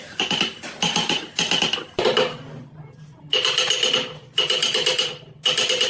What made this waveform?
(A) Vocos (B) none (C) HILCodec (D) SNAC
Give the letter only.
B